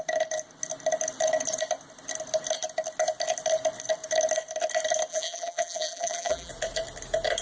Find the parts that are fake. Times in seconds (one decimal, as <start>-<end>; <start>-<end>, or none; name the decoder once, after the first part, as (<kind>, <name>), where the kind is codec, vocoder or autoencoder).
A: 5.1-6.5 (vocoder, BigVGAN v2)